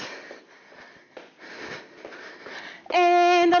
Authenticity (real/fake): real